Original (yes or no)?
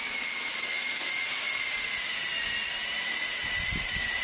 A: yes